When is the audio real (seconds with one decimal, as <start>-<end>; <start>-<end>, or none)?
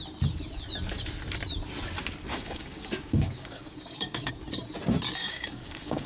0.0-2.3; 4.3-5.2